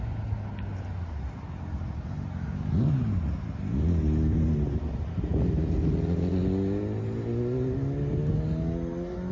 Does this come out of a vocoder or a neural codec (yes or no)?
no